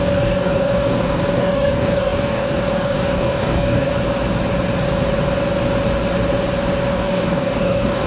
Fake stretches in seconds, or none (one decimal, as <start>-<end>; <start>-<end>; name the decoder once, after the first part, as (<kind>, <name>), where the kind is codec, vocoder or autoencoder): 0.0-3.9 (codec, DAC); 6.9-8.1